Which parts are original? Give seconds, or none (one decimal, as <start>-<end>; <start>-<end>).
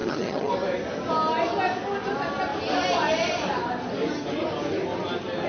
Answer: 0.5-5.5